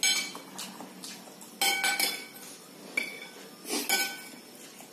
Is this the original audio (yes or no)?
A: yes